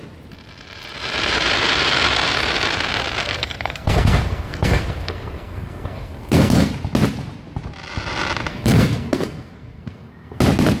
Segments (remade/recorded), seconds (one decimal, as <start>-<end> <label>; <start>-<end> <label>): 0.0-3.2 recorded; 3.2-6.7 remade; 6.7-8.5 recorded; 8.5-10.4 remade; 10.4-10.8 recorded